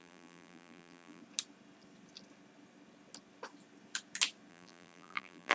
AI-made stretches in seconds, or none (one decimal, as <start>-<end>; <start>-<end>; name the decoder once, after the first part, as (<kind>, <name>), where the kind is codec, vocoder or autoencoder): 0.0-1.2 (vocoder, BigVGAN v2); 4.5-5.5